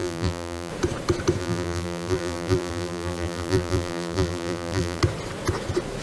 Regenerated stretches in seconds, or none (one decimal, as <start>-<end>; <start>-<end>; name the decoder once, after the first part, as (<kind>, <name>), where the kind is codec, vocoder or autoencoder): 0.0-0.7 (vocoder, BigVGAN v2); 1.4-5.0